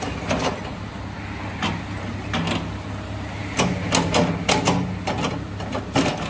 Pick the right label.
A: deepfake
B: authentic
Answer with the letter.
B